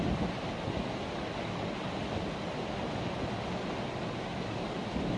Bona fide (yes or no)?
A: yes